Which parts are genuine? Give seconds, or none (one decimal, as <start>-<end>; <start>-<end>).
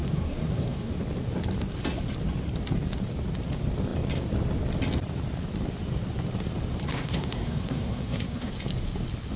0.9-6.9; 8.5-9.4